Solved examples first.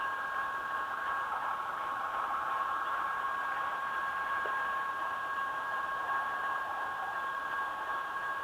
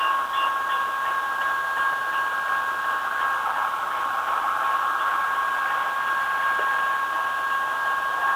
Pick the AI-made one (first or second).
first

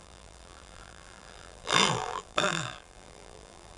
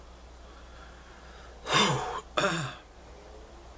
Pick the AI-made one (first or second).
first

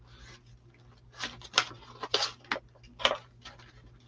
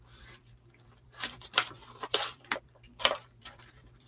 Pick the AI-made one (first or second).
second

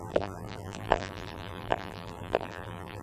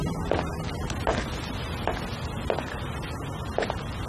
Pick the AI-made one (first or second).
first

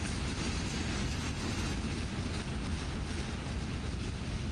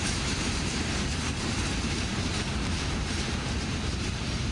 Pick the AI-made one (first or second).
second